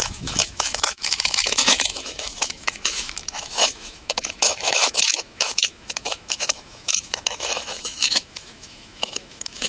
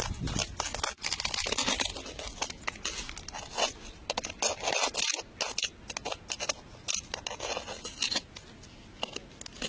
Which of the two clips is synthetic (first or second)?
first